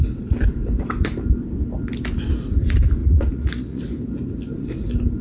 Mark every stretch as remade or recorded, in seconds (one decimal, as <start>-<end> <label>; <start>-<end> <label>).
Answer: 0.0-3.0 recorded; 3.0-3.8 remade; 3.8-5.2 recorded